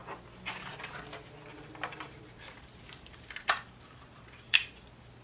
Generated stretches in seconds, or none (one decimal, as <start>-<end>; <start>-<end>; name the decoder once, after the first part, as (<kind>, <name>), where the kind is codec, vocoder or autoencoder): 1.5-4.6 (vocoder, BigVGAN v2)

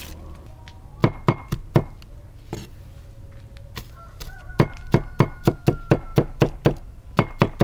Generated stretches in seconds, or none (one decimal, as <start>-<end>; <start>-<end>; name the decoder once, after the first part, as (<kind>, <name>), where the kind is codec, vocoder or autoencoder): none

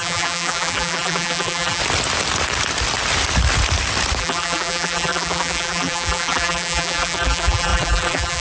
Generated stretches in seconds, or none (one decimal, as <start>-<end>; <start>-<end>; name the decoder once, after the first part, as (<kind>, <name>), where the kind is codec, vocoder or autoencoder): 0.0-1.8 (vocoder, BigVGAN v2); 4.2-8.4

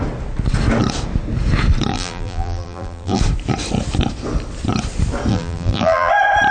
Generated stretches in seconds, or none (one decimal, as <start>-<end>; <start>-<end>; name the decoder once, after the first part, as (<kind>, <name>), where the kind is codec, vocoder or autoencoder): 1.9-3.2 (vocoder, BigVGAN v2); 5.3-6.1

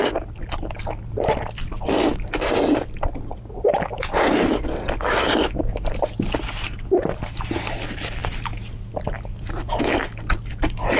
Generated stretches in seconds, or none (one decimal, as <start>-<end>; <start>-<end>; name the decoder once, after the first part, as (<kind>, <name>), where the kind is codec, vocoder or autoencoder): 0.0-0.8 (vocoder, BigVGAN v2); 8.2-9.8

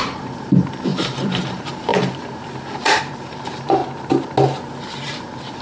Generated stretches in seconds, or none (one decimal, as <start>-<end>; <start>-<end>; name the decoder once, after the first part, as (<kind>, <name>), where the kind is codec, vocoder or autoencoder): 0.0-3.8 (vocoder, BigVGAN v2); 4.8-5.6

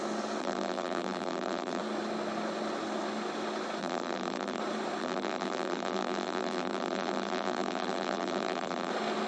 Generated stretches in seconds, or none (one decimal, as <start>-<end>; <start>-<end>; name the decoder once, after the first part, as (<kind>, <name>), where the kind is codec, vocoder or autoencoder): 0.4-1.8 (vocoder, BigVGAN v2); 3.8-4.6; 5.0-8.9